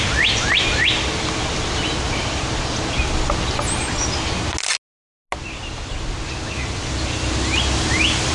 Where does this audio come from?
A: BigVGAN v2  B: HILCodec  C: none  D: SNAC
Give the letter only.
C